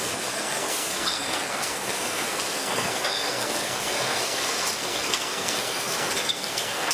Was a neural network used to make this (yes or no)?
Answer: yes